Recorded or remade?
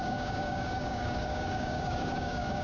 remade